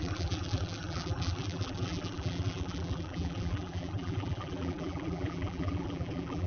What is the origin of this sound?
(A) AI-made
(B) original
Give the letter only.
A